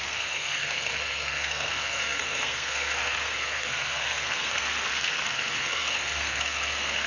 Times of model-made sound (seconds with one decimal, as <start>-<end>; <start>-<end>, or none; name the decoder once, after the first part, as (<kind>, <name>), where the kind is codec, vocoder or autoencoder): 0.0-7.1 (codec, SNAC)